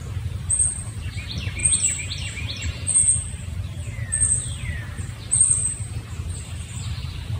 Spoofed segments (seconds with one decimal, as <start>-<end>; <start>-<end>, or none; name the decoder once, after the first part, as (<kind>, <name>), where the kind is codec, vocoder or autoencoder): 0.0-3.0 (vocoder, BigVGAN v2); 4.1-7.4